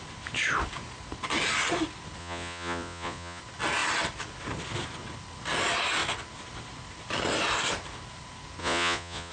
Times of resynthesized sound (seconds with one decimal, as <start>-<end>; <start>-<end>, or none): 2.2-3.4; 8.6-9.3